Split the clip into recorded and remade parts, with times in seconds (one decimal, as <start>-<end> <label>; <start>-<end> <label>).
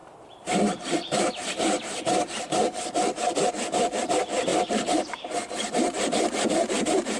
0.0-7.2 remade